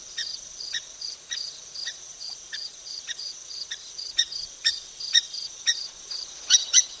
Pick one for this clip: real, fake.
fake